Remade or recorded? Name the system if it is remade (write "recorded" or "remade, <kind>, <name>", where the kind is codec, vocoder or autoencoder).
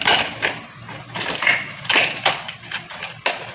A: recorded